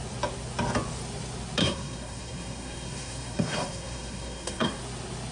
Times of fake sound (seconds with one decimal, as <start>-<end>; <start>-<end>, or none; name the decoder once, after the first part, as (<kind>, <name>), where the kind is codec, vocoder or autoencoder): 1.6-4.8 (codec, SNAC)